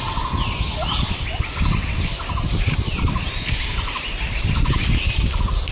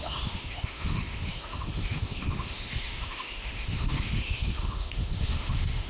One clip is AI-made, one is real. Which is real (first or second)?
first